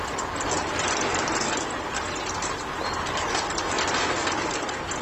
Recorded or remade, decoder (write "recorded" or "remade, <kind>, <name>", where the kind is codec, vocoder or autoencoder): recorded